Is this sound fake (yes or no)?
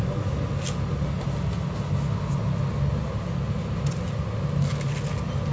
no